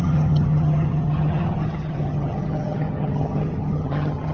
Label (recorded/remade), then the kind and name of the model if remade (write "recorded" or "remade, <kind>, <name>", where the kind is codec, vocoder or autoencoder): remade, vocoder, HiFi-GAN